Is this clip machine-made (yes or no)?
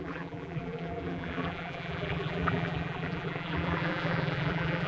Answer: yes